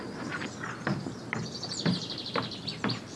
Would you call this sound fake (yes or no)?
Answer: no